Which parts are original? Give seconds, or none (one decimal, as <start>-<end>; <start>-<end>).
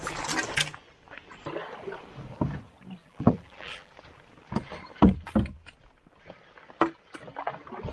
0.0-3.0; 3.9-7.9